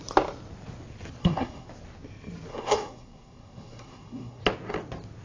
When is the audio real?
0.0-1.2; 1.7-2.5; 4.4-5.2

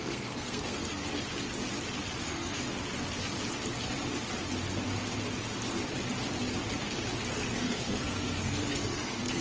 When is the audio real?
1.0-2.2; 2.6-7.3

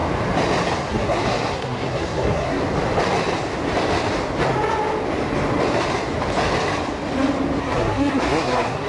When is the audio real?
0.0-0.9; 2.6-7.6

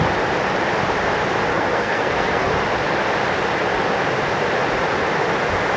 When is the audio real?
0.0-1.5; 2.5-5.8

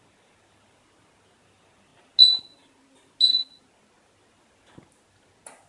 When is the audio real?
0.0-5.7

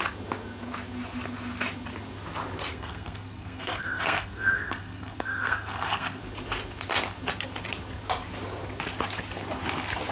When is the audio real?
0.0-2.7; 6.2-10.1

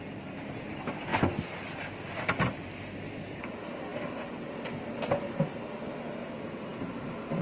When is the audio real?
0.0-7.4

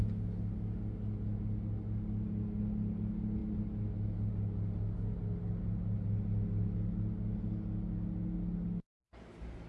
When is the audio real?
0.0-9.7